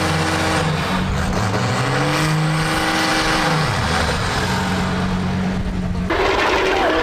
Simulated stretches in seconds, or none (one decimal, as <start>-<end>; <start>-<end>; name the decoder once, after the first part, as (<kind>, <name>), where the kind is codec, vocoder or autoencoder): none